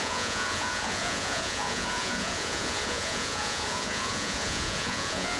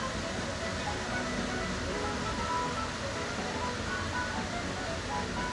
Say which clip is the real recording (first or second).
second